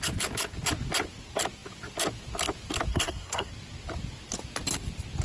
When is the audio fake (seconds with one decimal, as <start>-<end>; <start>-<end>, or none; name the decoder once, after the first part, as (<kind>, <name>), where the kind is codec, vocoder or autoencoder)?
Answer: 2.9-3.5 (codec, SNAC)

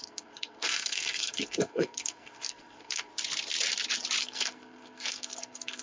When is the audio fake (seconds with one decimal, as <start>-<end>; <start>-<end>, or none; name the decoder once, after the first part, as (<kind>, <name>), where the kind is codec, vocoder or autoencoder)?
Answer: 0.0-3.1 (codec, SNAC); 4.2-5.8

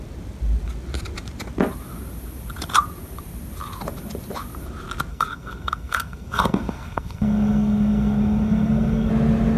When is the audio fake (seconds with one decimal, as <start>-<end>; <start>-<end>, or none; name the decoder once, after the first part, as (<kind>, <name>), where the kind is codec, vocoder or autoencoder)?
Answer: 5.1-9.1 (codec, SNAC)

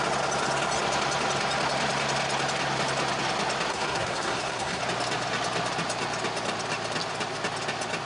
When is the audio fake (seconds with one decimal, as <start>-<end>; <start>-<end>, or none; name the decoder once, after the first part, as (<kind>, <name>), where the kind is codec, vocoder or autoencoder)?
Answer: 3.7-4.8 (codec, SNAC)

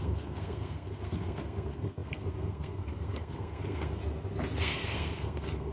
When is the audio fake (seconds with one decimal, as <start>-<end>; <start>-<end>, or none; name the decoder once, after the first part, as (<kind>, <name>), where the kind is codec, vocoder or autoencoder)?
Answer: 0.0-4.0 (codec, SNAC); 4.6-5.7